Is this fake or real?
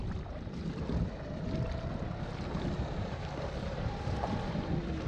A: fake